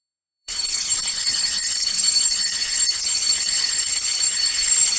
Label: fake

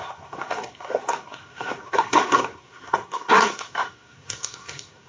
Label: fake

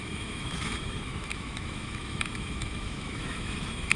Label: fake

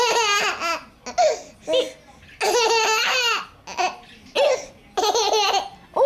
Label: real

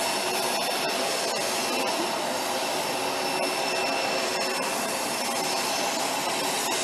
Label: real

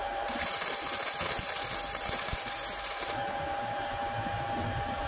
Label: fake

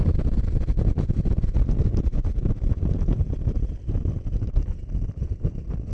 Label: real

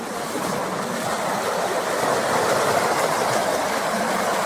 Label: real